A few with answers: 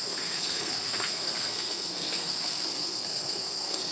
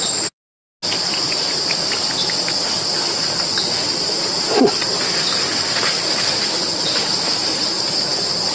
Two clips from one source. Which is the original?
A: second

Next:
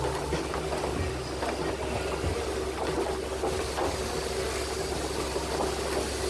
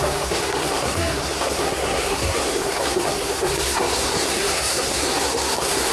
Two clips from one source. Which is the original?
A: first